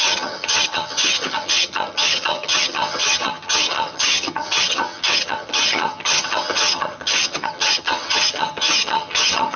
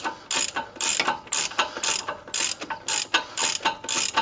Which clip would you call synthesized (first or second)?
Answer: first